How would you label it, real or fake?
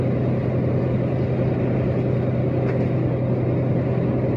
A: real